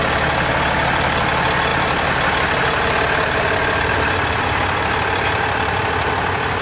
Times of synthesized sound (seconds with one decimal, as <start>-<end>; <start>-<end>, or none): none